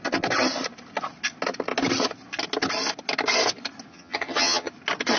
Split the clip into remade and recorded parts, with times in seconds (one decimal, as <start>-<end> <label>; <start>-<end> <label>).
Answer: 0.0-3.9 recorded; 3.9-4.7 remade; 4.7-5.2 recorded

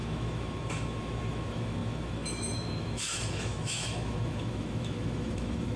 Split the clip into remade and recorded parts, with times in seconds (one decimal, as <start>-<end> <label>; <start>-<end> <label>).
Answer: 0.0-5.8 remade

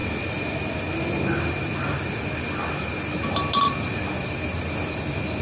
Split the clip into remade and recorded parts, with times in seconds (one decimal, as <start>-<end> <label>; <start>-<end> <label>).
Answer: 0.0-5.4 recorded

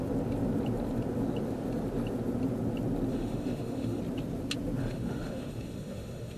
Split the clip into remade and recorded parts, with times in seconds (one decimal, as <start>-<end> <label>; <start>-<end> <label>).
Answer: 0.0-3.1 recorded; 3.1-4.0 remade; 4.0-4.8 recorded; 4.8-6.4 remade

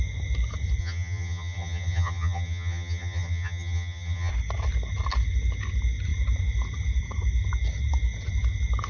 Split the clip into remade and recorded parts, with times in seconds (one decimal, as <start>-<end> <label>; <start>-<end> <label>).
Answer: 0.0-0.8 recorded; 0.8-4.3 remade; 4.3-8.9 recorded